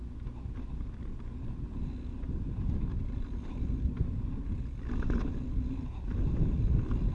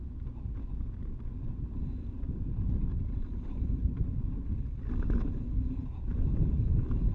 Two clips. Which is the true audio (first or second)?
first